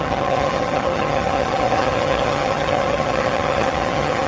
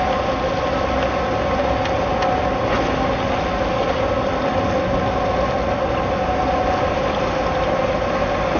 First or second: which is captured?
second